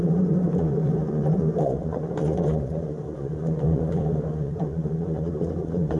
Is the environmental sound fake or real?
fake